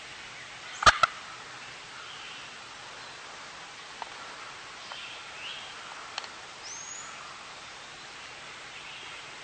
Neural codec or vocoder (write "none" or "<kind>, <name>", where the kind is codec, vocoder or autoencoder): none